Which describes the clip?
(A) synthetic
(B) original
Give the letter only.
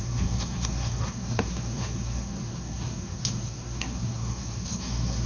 A